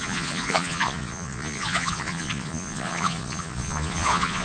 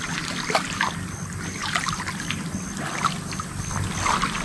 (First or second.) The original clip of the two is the second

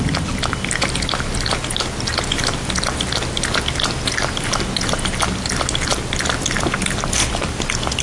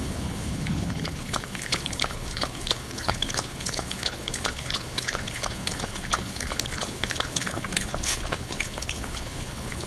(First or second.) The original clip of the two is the first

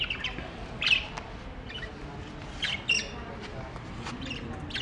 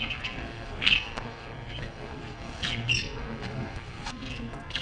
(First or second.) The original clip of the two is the first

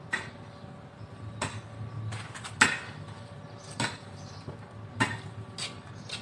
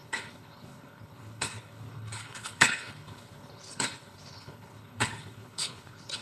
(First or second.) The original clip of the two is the first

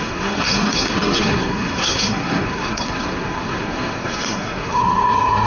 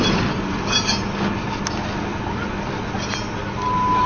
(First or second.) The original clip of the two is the second